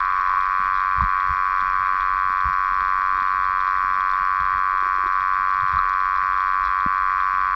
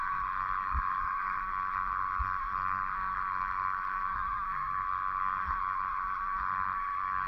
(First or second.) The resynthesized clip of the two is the second